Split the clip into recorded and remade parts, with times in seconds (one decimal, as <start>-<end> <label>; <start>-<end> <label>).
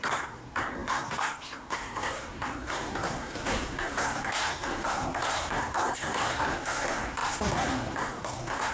0.0-8.7 remade